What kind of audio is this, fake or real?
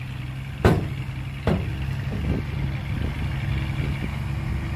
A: real